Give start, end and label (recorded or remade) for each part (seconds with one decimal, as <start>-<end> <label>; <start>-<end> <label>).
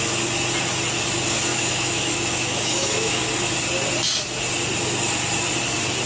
0.0-1.5 recorded; 1.5-3.2 remade; 3.2-6.1 recorded